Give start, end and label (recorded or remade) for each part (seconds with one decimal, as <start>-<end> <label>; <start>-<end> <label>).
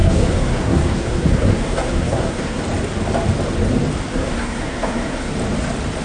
0.0-2.6 remade; 2.6-4.1 recorded; 4.1-5.3 remade; 5.3-6.0 recorded